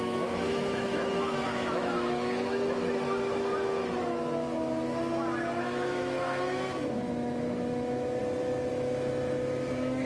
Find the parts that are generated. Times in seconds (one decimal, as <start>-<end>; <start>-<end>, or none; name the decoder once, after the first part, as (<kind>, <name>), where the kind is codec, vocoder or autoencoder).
0.0-3.5 (autoencoder, DAC-VAE); 5.6-8.2; 8.7-10.1